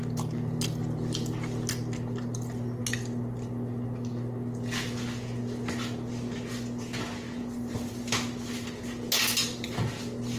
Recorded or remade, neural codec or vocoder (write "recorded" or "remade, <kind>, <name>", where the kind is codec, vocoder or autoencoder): recorded